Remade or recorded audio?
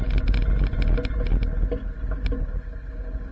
recorded